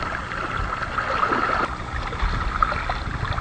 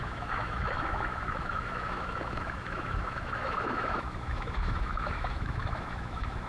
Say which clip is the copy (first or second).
second